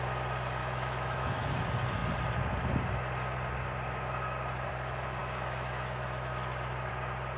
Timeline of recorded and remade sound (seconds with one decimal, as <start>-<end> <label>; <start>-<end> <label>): 0.0-0.6 recorded; 0.6-1.5 remade; 1.5-5.2 recorded; 5.2-6.9 remade; 6.9-7.4 recorded